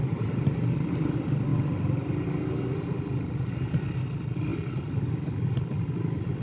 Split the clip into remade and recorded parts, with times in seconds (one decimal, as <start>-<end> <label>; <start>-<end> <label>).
0.0-1.1 remade; 1.1-4.5 recorded; 4.5-5.1 remade; 5.1-6.4 recorded